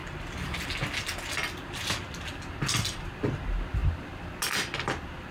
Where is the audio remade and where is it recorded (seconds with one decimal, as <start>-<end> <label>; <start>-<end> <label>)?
0.0-5.3 recorded